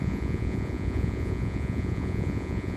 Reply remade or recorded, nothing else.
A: remade